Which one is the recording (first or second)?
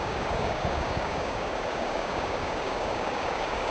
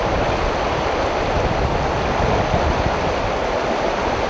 second